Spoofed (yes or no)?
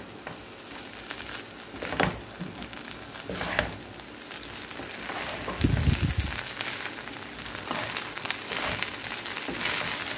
no